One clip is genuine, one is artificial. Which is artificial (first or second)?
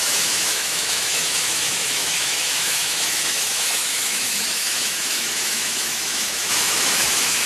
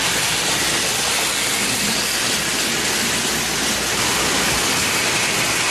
first